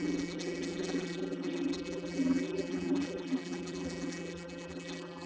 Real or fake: fake